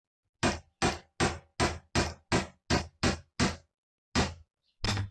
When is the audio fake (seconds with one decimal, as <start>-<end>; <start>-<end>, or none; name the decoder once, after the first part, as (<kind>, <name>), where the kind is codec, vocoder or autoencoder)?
none